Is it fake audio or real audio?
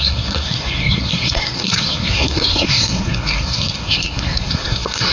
fake